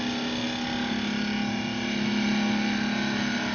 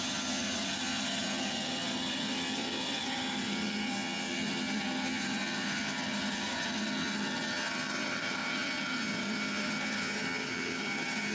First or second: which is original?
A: first